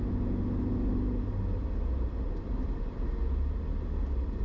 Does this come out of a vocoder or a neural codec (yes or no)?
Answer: no